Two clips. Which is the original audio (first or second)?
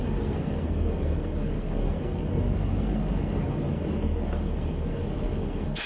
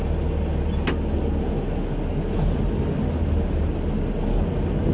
second